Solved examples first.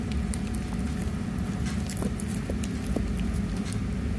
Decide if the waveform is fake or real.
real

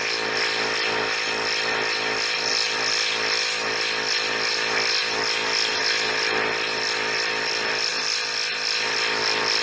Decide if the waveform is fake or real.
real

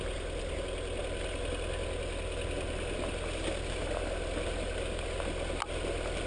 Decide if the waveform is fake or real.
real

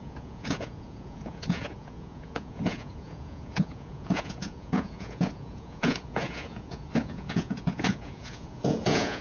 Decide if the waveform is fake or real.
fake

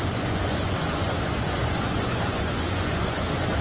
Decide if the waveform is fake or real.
fake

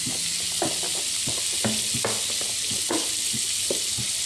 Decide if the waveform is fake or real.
real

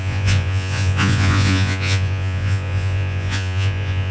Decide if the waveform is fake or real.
fake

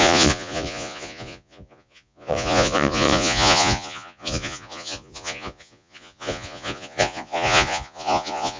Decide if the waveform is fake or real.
fake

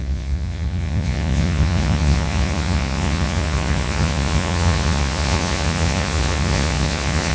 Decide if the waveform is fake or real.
fake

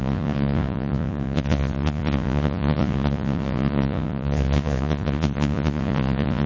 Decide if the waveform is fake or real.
fake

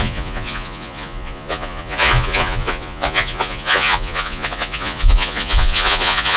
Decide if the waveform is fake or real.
fake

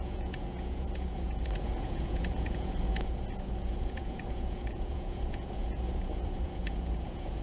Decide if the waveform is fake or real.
fake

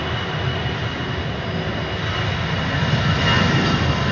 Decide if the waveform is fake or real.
real